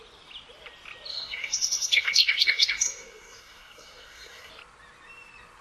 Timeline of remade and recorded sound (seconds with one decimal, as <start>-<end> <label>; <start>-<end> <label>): 0.0-1.1 recorded; 1.1-4.5 remade; 4.5-5.6 recorded